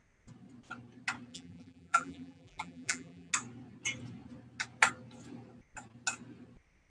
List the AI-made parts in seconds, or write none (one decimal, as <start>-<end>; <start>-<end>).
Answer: 1.3-3.3